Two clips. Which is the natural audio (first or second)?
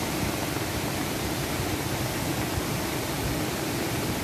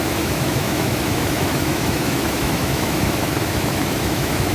first